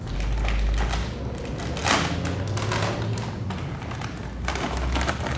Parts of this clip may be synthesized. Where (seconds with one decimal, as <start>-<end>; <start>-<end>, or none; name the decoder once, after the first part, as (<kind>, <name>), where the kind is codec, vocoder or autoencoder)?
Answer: none